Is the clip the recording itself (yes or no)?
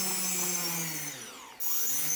yes